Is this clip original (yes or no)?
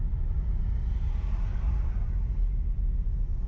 yes